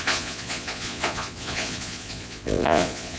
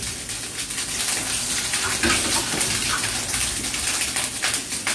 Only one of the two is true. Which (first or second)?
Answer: second